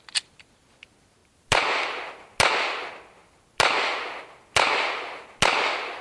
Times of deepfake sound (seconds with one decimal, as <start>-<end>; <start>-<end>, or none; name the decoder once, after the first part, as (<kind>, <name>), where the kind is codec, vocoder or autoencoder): none